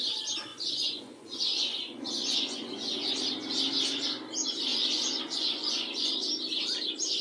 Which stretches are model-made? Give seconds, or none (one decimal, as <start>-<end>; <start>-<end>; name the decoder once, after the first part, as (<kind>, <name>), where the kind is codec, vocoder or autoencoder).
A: 0.5-3.1 (vocoder, Vocos); 4.7-6.1